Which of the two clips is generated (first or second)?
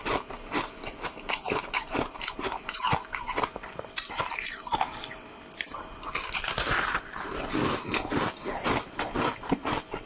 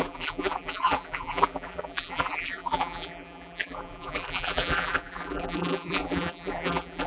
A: second